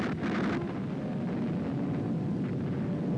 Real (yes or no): yes